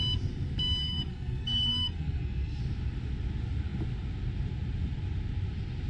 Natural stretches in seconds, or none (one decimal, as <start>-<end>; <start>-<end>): 0.0-0.8; 2.6-5.9